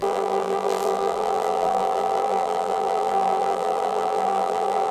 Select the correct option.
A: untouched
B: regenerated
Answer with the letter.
B